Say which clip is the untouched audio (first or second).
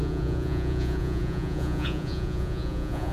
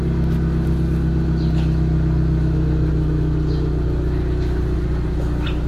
second